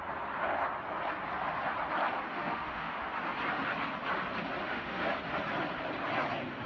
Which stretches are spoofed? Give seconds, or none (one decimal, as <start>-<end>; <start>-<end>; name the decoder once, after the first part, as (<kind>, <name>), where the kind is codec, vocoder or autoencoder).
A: 2.3-3.0 (autoencoder, DAC-VAE); 4.6-5.1